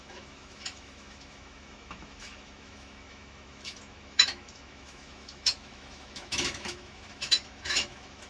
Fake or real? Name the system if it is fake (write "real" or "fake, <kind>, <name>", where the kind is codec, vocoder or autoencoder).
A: fake, autoencoder, DAC-VAE